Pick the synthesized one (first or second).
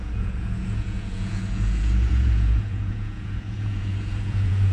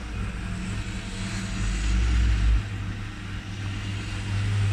first